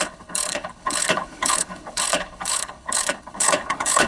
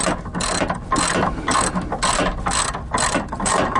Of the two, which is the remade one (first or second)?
first